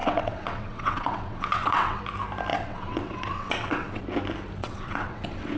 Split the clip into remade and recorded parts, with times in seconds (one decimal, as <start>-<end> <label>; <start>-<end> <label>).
0.0-2.0 remade; 2.0-2.5 recorded; 2.5-4.0 remade; 4.0-4.6 recorded; 4.6-5.6 remade